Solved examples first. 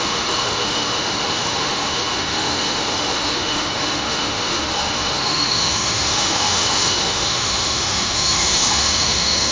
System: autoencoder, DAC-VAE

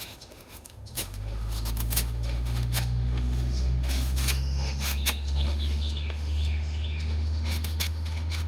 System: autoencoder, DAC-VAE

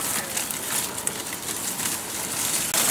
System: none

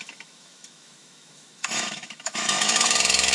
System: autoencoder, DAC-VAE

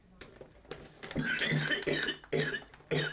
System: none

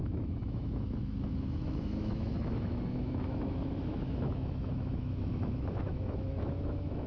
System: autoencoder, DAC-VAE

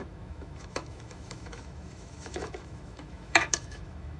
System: autoencoder, DAC-VAE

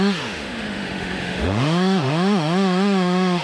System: autoencoder, DAC-VAE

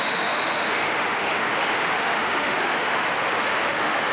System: autoencoder, DAC-VAE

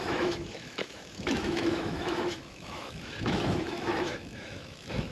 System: autoencoder, DAC-VAE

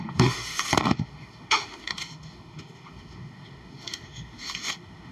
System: autoencoder, DAC-VAE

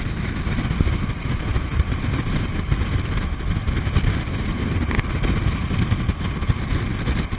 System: none